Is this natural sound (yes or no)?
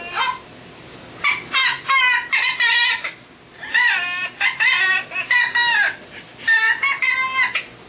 yes